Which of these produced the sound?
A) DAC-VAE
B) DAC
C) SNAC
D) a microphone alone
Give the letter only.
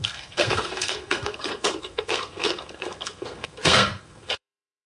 C